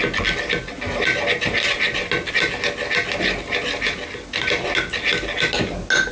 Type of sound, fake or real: real